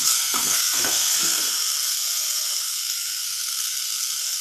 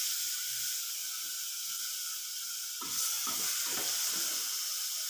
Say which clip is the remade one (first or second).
first